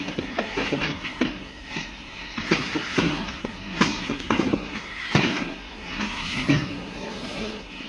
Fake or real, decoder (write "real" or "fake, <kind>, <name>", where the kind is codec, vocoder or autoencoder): fake, codec, SNAC